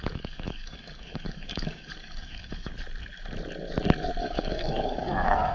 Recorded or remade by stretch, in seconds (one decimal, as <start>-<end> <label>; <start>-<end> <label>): 0.0-2.7 remade; 2.7-4.2 recorded; 4.2-5.5 remade